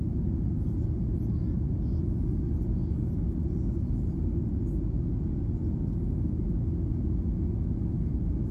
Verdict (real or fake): real